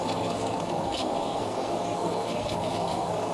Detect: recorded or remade remade